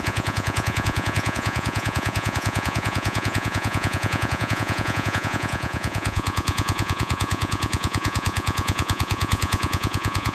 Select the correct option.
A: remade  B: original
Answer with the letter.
A